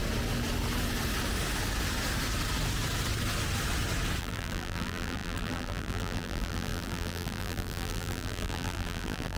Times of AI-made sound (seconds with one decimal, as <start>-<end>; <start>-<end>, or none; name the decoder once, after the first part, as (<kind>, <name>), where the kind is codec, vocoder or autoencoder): 4.2-9.4 (vocoder, BigVGAN v2)